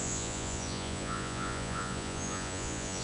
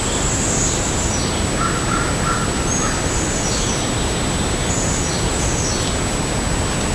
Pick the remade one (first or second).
first